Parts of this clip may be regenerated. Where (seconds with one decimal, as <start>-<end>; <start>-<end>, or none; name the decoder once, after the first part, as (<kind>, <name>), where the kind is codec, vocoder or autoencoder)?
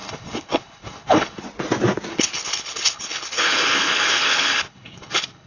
0.0-1.4 (codec, HILCodec); 2.1-5.5